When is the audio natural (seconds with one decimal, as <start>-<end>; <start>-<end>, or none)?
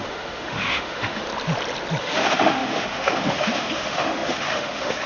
1.3-2.0